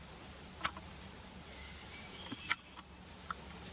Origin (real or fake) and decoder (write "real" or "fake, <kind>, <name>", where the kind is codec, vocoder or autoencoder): real